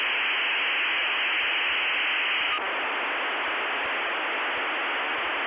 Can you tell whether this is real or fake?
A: real